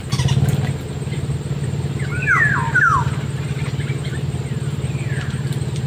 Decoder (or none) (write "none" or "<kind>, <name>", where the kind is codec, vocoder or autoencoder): none